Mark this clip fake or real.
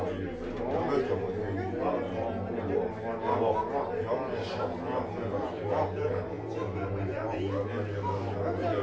real